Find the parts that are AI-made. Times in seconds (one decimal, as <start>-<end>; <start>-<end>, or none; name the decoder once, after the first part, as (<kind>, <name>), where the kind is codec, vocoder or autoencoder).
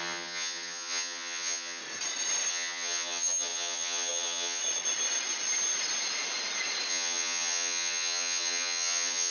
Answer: 0.0-1.8 (vocoder, HiFi-GAN); 2.5-4.6; 6.9-9.3